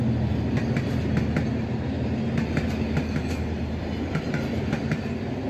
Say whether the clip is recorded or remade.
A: recorded